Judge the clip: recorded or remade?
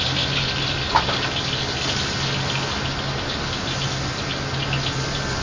recorded